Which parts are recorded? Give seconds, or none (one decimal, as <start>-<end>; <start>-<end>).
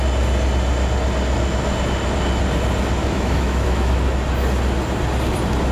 0.0-3.0; 3.9-5.7